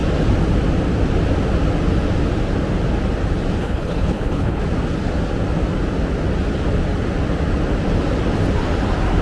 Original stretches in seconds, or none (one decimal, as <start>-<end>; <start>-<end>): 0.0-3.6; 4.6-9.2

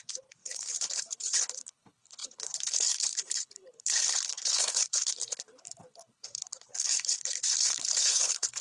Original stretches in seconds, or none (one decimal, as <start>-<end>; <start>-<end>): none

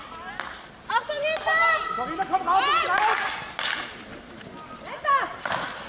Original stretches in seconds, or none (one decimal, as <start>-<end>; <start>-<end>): 0.0-5.9

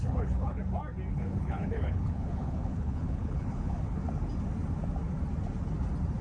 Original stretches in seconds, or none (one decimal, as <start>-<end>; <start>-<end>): 0.6-1.1; 4.0-6.2

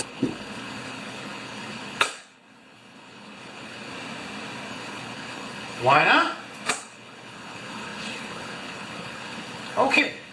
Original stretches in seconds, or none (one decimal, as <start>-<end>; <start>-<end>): 3.9-4.7; 6.0-6.8